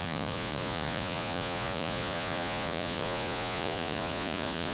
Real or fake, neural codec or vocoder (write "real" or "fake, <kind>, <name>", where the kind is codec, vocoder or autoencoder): fake, vocoder, Vocos